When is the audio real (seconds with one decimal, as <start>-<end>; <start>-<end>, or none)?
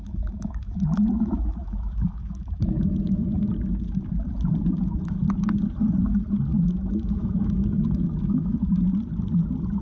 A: 3.5-6.5; 8.7-9.8